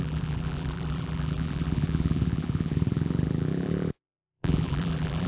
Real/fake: fake